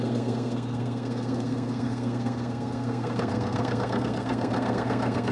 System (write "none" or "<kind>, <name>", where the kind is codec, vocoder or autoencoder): codec, SNAC